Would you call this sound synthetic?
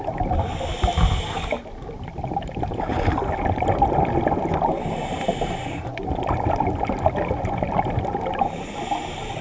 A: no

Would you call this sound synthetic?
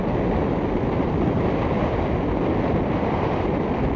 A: no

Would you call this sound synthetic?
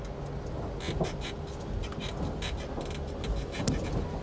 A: no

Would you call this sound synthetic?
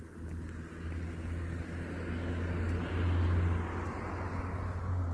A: no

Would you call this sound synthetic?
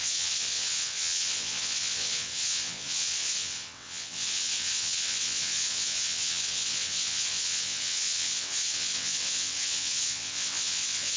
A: yes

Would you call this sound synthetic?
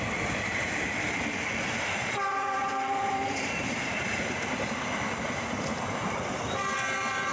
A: yes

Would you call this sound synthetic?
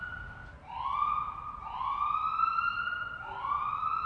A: no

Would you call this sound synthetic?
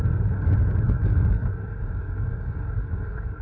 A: yes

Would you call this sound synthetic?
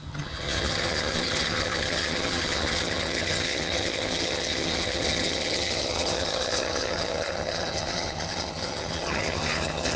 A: yes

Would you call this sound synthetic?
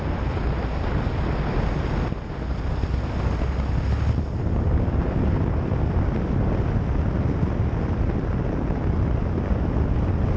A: no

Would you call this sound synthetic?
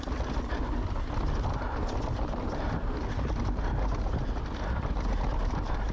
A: no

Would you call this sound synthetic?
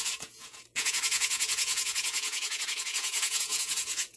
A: yes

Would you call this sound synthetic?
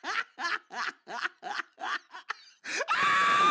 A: no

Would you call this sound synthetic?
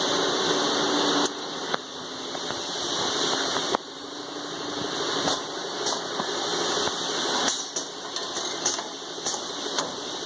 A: no